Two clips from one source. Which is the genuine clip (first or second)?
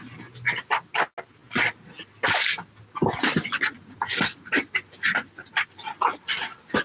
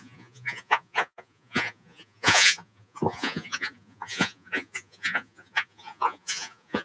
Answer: first